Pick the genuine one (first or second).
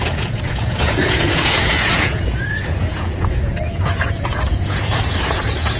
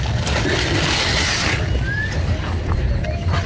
second